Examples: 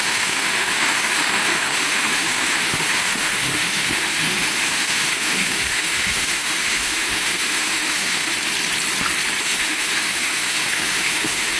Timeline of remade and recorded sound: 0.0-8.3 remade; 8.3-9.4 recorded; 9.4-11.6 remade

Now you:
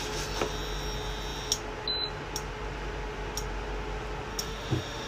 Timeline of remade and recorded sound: 0.0-4.3 recorded; 4.3-5.1 remade

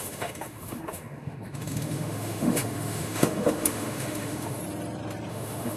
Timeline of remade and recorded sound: 0.0-4.6 remade; 4.6-5.3 recorded; 5.3-5.8 remade

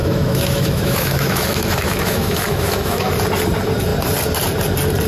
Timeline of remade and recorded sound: 0.0-3.1 remade; 3.1-5.1 recorded

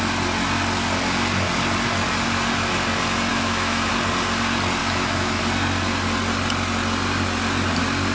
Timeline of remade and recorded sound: 0.0-3.3 recorded; 3.3-3.9 remade; 3.9-4.8 recorded; 4.8-5.4 remade; 5.4-8.1 recorded